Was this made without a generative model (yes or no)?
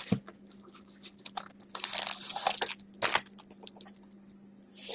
yes